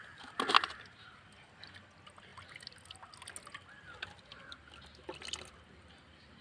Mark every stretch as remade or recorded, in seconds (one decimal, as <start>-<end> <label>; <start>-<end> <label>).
0.0-6.4 recorded